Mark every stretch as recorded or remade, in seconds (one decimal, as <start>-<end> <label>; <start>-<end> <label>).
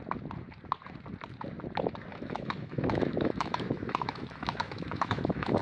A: 0.0-2.1 recorded; 2.1-5.6 remade